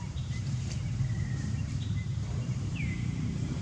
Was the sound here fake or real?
fake